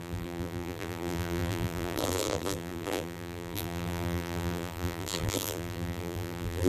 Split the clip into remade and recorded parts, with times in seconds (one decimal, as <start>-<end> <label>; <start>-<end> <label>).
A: 0.0-6.7 remade